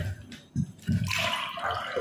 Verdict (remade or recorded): recorded